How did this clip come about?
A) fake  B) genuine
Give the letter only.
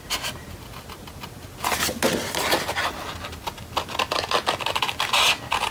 B